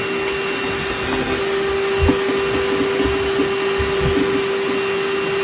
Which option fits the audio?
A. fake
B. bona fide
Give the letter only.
B